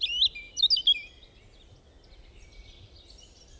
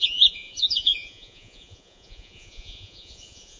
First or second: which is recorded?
first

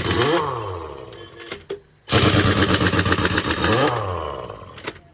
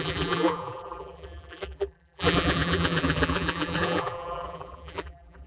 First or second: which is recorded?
first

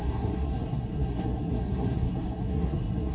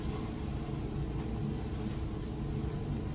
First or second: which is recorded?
second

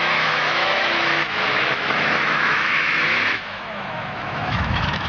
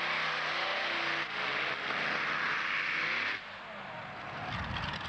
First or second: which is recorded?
second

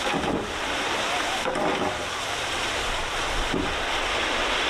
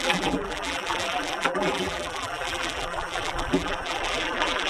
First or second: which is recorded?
first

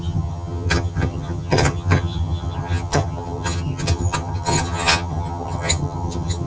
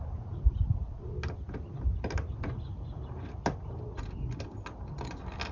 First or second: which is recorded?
second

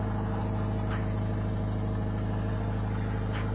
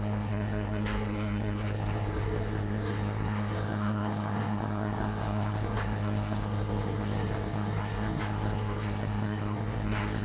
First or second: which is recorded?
first